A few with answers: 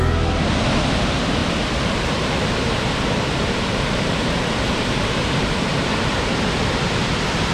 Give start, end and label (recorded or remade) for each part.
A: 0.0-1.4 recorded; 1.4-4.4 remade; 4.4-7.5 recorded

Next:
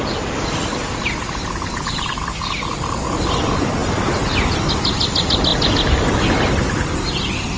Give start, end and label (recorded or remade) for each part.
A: 0.0-1.4 recorded; 1.4-2.3 remade; 2.3-7.6 recorded

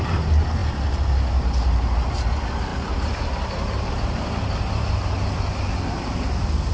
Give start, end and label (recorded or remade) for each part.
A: 0.0-2.7 recorded; 2.7-3.9 remade; 3.9-6.7 recorded

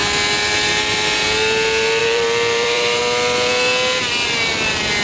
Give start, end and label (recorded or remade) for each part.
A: 0.0-2.0 recorded; 2.0-3.0 remade; 3.0-5.0 recorded

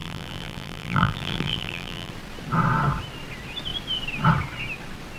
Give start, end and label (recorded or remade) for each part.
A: 0.0-2.1 remade; 2.1-5.2 recorded

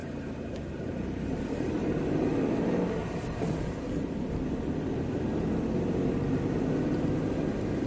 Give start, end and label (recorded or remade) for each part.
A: 0.0-2.8 remade; 2.8-7.9 recorded

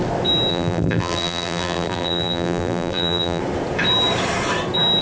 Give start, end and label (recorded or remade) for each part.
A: 0.0-0.5 recorded; 0.5-3.4 remade; 3.4-5.0 recorded

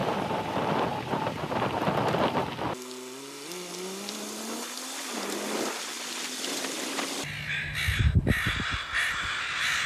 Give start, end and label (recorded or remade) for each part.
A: 0.0-0.6 remade; 0.6-9.9 recorded